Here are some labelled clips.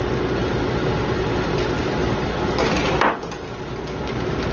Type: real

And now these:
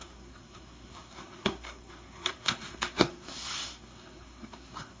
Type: fake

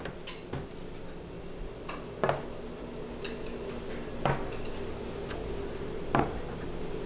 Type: real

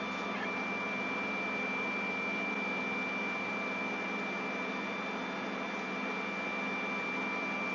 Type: real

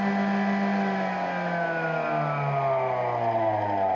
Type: real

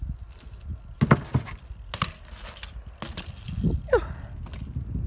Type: real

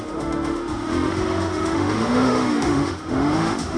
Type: fake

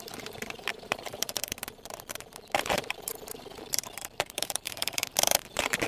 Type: fake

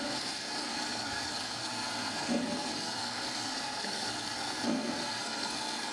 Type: fake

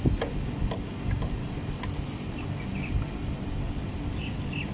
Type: real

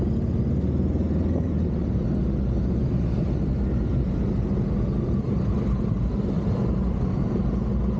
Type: real